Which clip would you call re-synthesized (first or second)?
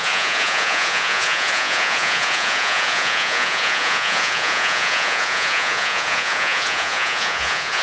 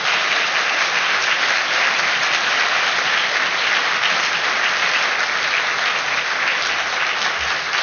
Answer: first